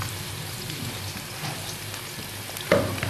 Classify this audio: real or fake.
real